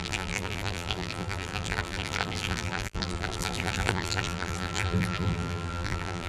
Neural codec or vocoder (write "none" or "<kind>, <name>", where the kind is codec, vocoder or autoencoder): vocoder, BigVGAN v2